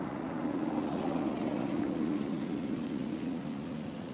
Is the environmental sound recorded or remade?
remade